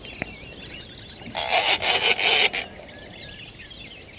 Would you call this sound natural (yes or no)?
yes